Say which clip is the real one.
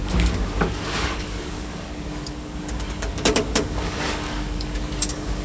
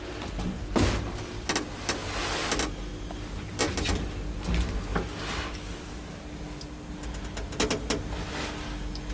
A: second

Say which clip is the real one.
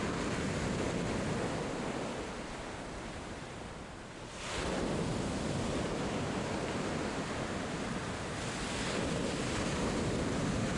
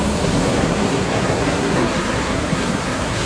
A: first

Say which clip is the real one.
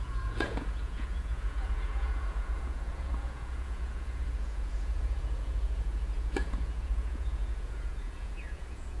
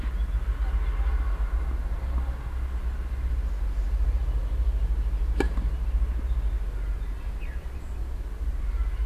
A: second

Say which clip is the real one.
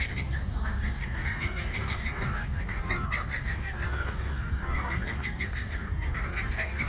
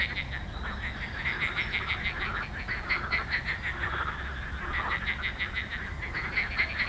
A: second